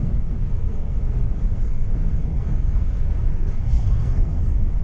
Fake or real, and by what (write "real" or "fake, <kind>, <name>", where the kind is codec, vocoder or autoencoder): fake, codec, SNAC